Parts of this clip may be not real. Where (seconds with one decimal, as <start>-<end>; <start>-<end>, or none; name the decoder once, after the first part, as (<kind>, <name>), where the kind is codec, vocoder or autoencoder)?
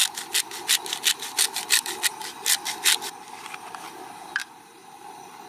0.6-5.5 (vocoder, BigVGAN v2)